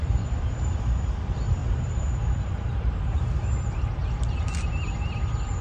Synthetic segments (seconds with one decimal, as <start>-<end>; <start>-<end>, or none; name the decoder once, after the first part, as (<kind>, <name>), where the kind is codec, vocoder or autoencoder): 0.0-4.0 (vocoder, BigVGAN v2)